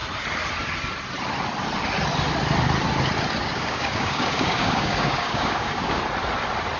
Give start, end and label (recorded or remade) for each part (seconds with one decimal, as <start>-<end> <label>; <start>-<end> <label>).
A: 0.0-3.4 recorded; 3.4-6.0 remade; 6.0-6.8 recorded